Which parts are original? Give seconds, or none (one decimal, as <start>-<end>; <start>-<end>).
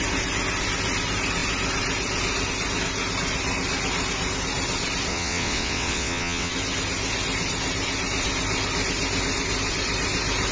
0.0-5.1; 6.5-10.5